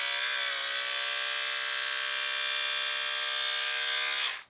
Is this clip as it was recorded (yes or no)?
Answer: yes